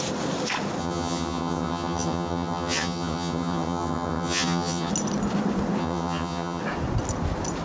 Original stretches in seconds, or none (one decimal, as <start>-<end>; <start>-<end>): 0.0-0.8; 4.9-5.8; 6.6-7.6